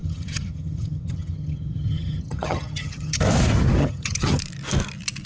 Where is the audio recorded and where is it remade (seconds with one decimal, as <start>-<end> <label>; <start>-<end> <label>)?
0.0-3.2 remade; 3.2-3.8 recorded; 3.8-4.4 remade; 4.4-5.3 recorded